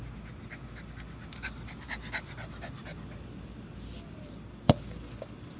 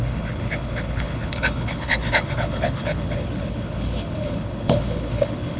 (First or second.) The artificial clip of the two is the second